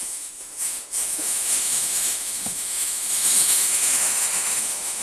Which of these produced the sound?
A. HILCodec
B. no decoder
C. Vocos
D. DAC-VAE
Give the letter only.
D